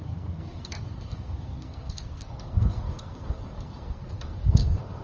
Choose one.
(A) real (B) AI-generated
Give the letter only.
B